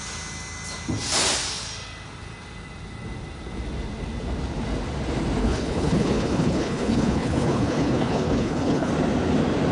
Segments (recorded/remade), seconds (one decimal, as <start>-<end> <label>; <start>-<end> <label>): 0.0-5.4 recorded; 5.4-8.9 remade; 8.9-9.7 recorded